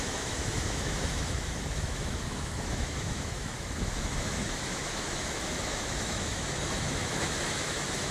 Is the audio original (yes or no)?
no